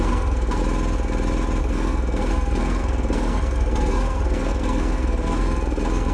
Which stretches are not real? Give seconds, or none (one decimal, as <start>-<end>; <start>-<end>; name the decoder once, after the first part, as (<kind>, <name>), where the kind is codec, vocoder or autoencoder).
0.0-0.6 (codec, SNAC); 1.6-6.1